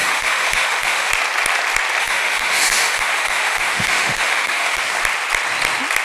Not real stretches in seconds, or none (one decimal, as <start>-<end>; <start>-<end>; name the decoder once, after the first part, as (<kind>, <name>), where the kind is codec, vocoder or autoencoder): 0.0-1.1 (autoencoder, DAC-VAE); 2.0-4.8